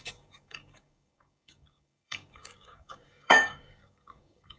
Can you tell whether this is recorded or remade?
remade